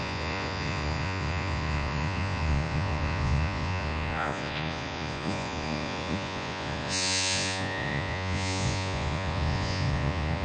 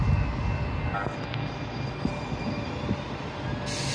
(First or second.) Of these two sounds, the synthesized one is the first